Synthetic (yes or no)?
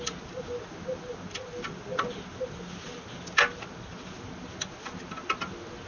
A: no